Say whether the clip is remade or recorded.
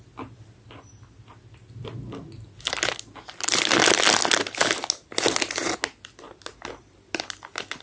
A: recorded